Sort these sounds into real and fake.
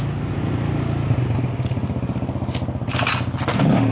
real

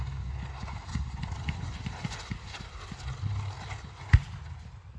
real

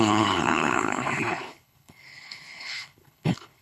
fake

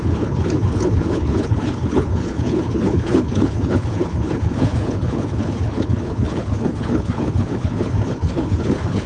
fake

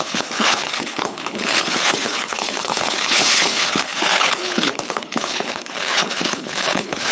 fake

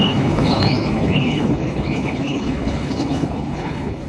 fake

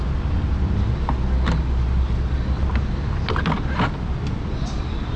real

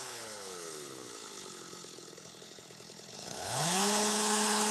fake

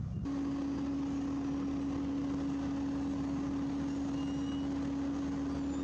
real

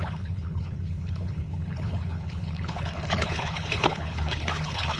fake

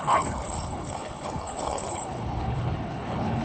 fake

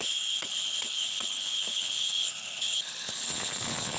fake